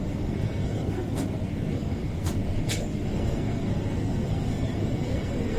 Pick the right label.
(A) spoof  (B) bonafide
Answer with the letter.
A